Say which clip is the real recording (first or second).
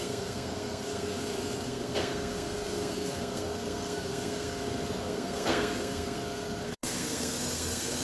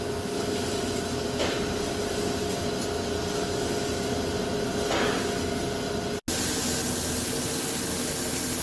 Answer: second